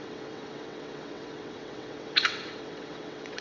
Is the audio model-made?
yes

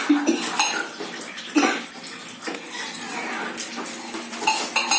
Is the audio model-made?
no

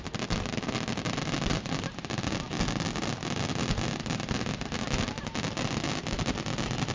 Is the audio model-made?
no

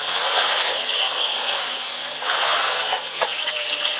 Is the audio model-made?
yes